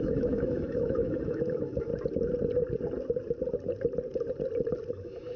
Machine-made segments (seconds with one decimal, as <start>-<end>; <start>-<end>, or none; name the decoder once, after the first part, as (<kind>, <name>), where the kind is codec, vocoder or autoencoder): 0.0-1.9 (autoencoder, DAC-VAE); 4.9-5.4